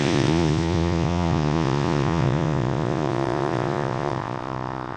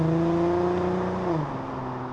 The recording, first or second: second